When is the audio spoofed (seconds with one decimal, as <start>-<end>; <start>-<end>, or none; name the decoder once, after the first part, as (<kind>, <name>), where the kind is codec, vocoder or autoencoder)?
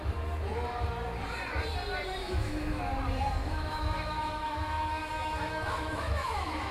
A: 2.2-2.8 (autoencoder, DAC-VAE); 3.4-6.7